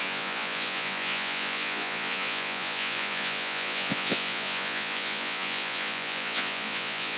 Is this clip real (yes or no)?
no